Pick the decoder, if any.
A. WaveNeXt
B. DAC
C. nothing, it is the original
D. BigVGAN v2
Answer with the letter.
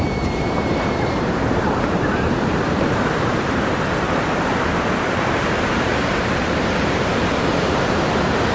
D